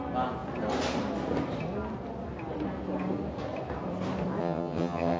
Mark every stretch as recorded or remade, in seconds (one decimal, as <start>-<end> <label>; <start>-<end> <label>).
0.0-4.4 recorded; 4.4-5.2 remade